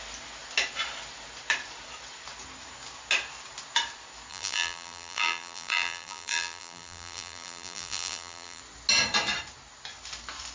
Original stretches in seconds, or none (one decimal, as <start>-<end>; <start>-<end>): 0.0-4.3; 8.6-10.5